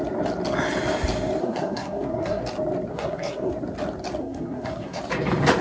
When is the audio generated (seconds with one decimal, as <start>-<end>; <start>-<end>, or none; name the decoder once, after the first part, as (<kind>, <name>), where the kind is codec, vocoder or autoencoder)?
1.4-2.4 (codec, SNAC); 2.9-3.5; 4.2-5.0